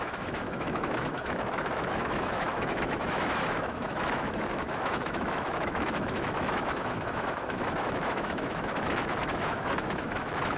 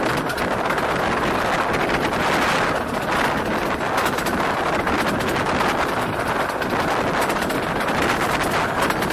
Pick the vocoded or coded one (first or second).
first